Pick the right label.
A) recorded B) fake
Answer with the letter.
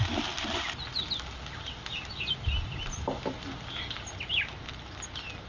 A